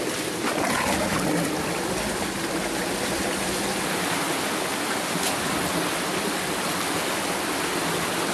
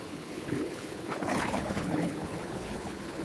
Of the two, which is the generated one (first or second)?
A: second